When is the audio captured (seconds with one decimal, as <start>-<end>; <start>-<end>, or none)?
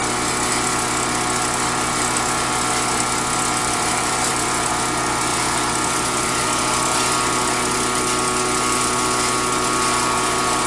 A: 0.0-3.6; 4.7-5.3; 7.0-10.7